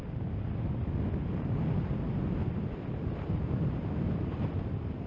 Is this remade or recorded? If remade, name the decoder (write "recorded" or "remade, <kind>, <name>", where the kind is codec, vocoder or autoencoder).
recorded